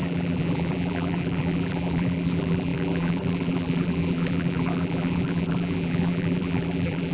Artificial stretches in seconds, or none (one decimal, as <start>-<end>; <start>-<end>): 0.0-7.1